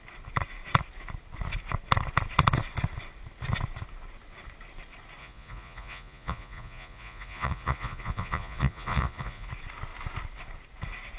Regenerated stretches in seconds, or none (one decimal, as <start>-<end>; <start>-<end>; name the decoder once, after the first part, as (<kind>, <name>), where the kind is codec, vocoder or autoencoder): 5.2-9.5 (vocoder, Vocos)

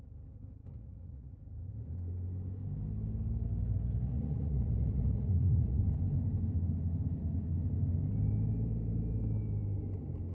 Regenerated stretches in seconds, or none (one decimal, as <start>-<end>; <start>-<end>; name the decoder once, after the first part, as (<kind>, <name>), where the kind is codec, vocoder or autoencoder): 0.6-1.4 (vocoder, Vocos); 4.1-5.8

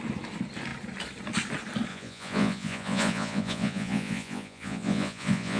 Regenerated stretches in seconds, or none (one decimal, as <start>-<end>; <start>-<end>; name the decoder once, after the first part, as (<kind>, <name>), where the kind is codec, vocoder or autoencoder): 1.9-5.6 (vocoder, Vocos)

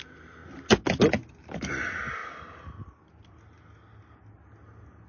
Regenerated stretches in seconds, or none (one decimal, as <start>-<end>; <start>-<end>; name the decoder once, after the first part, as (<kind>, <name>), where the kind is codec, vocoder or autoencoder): none

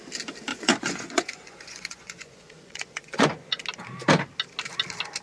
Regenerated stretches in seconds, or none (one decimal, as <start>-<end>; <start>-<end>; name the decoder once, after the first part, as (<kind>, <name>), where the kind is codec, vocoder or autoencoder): 0.5-3.6 (vocoder, Vocos)

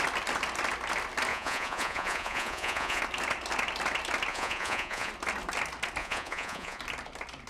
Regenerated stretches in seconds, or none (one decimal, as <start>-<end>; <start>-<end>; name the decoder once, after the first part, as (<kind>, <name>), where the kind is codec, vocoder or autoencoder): 1.3-3.0 (vocoder, Vocos); 4.3-5.1; 6.0-6.8